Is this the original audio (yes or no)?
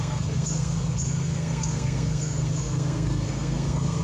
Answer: no